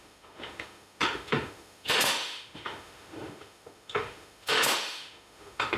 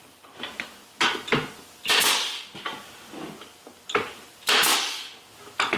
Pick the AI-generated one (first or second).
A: first